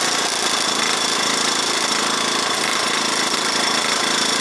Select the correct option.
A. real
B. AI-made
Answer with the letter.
A